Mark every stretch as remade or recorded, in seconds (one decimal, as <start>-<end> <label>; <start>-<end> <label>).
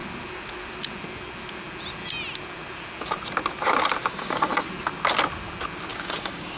0.0-4.0 recorded; 4.0-4.5 remade; 4.5-5.9 recorded; 5.9-6.6 remade